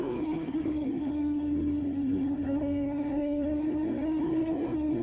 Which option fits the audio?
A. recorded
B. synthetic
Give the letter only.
B